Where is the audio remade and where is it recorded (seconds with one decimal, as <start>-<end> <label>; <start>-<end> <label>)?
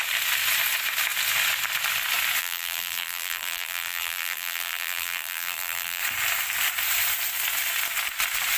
0.0-2.4 recorded; 2.4-6.0 remade; 6.0-8.6 recorded